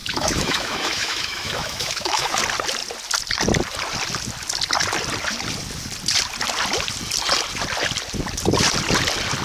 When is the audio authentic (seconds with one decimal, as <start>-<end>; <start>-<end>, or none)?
2.4-9.4